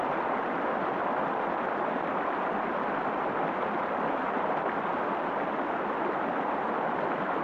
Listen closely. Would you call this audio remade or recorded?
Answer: recorded